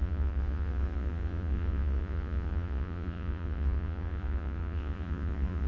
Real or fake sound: fake